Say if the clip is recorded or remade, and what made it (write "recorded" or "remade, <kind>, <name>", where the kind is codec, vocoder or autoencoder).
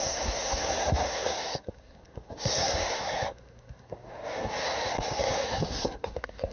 remade, codec, SNAC